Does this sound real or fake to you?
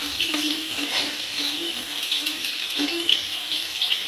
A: fake